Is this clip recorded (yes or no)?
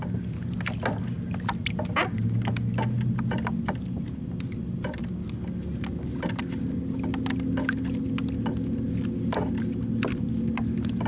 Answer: yes